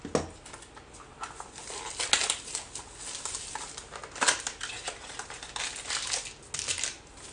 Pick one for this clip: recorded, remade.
recorded